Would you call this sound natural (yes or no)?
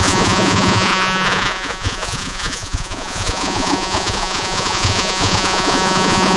no